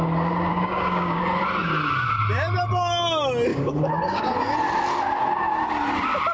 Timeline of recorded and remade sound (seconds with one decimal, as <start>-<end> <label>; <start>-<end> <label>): 0.0-0.5 recorded; 0.5-1.2 remade; 1.2-3.5 recorded; 3.5-4.3 remade; 4.3-6.3 recorded